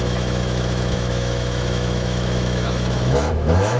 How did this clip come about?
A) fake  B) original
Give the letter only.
A